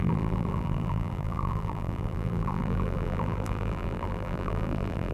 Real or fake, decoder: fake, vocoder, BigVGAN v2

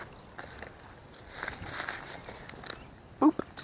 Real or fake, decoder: real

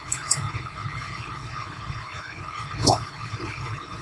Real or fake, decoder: fake, codec, HILCodec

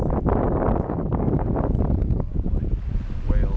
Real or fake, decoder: real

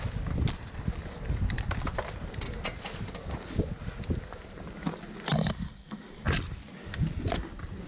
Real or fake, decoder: real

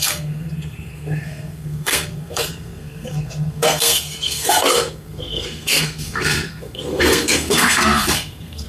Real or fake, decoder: fake, codec, SNAC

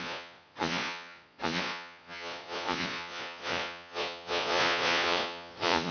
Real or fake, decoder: fake, vocoder, Vocos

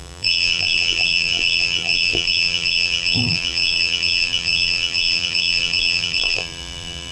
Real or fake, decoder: fake, vocoder, BigVGAN v2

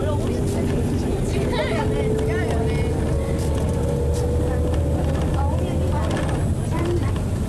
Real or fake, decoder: real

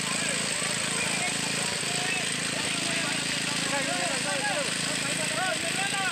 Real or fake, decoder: real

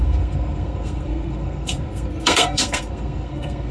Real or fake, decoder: fake, codec, SNAC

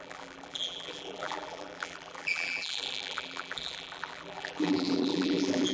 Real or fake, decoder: fake, vocoder, BigVGAN v2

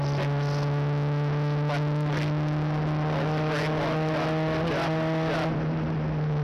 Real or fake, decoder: real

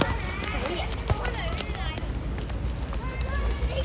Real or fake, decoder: real